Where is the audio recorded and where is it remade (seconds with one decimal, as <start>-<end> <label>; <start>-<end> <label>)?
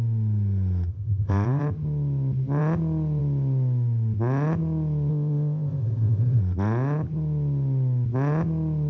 0.0-0.9 recorded; 0.9-1.6 remade; 1.6-5.1 recorded; 5.1-6.4 remade; 6.4-8.9 recorded